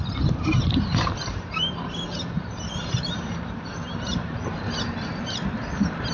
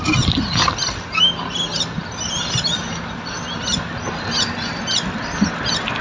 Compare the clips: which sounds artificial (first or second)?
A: first